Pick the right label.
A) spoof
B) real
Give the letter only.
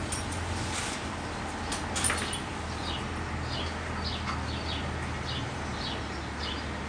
B